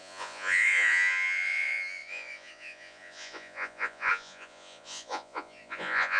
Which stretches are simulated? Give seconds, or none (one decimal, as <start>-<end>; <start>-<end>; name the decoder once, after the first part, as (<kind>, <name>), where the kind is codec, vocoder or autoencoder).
0.0-6.2 (vocoder, Vocos)